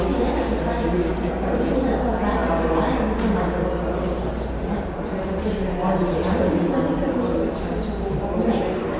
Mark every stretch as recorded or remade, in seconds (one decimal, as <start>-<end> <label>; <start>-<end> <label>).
0.0-9.0 recorded